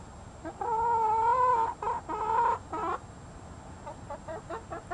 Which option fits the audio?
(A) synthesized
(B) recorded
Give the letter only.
B